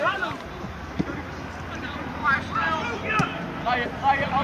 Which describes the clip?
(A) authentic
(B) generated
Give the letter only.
A